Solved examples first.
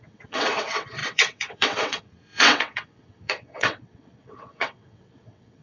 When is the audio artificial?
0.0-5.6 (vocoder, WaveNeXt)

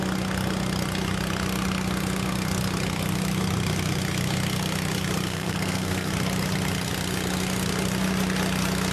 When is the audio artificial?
5.3-6.1 (codec, SNAC)